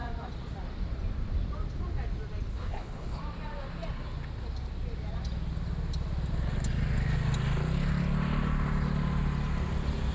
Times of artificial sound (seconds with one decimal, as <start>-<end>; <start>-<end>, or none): 2.5-3.2